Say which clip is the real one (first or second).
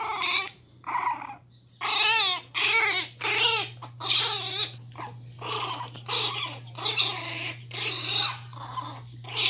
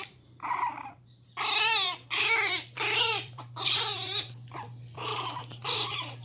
first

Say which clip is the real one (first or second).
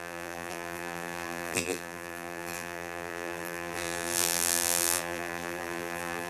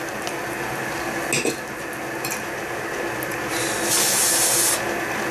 second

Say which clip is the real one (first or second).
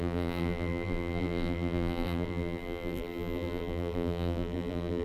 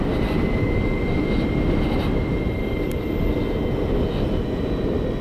second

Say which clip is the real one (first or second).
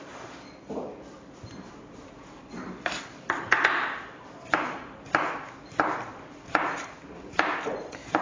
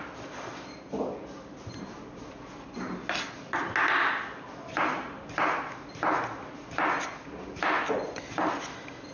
second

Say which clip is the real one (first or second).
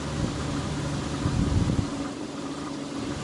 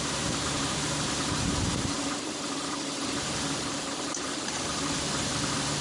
first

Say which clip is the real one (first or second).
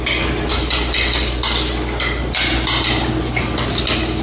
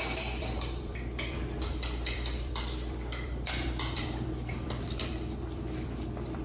first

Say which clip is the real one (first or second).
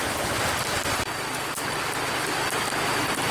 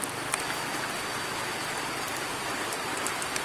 second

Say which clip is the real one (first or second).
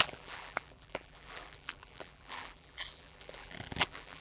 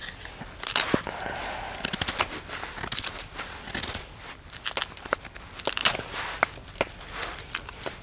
second